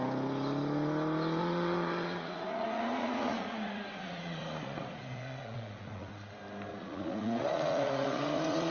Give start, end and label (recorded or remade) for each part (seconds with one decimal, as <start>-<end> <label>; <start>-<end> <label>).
0.0-1.4 recorded; 1.4-6.1 remade; 6.1-6.7 recorded; 6.7-8.7 remade